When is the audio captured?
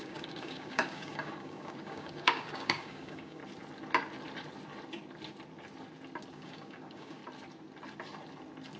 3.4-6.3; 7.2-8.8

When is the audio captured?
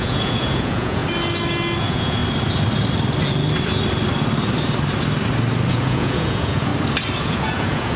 1.0-1.8; 2.2-5.7; 6.7-7.2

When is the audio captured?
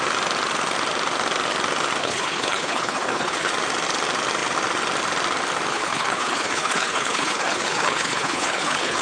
0.0-2.0; 3.5-5.7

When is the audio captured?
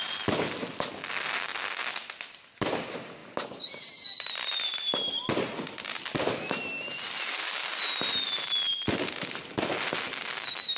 0.0-10.8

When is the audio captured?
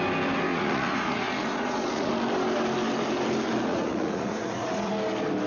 0.0-0.5; 2.1-3.7; 4.9-5.5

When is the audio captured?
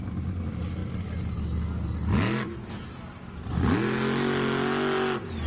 0.0-5.5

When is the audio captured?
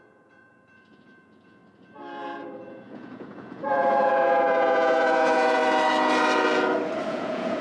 1.6-2.7; 5.6-7.1